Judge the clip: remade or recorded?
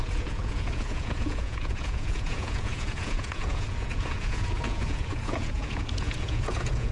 remade